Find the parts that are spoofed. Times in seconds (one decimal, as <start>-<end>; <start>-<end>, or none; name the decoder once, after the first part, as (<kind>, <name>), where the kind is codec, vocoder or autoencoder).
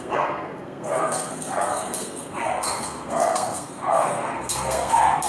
0.0-5.3 (codec, SNAC)